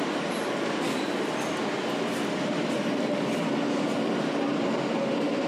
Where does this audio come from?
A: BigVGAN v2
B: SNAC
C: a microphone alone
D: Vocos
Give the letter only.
C